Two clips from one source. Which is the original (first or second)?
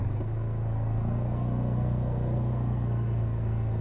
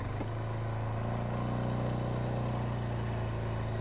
second